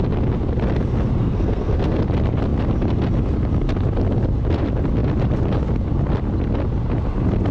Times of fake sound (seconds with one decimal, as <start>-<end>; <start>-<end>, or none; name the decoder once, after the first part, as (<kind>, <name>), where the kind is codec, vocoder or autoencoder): 1.2-2.0 (codec, SNAC)